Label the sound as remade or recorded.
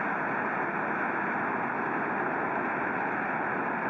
recorded